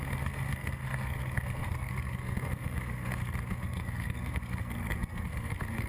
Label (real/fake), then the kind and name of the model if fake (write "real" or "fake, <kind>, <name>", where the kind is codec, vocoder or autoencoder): fake, codec, SNAC